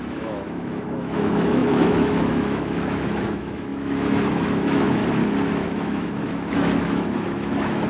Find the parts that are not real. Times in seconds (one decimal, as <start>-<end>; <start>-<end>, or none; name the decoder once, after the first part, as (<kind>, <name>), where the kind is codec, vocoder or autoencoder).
0.0-5.0 (autoencoder, DAC-VAE); 5.5-7.9